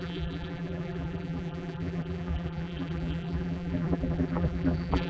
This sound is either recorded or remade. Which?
remade